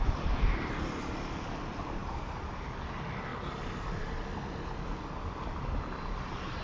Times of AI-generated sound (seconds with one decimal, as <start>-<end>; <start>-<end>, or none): 2.0-2.5